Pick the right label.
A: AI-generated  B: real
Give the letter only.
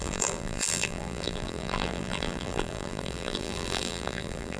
A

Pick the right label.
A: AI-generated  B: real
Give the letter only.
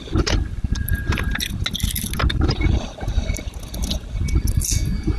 B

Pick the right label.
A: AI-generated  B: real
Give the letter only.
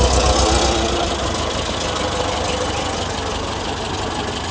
B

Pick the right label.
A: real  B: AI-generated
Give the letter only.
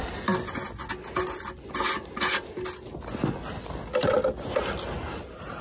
A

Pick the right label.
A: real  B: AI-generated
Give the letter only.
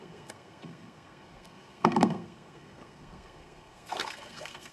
B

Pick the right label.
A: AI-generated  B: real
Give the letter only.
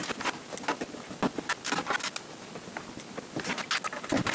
B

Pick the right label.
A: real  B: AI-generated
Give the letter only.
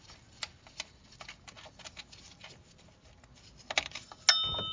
A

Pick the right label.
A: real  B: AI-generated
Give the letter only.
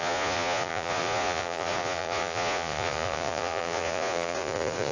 B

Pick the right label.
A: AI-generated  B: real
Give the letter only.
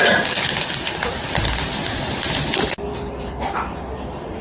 B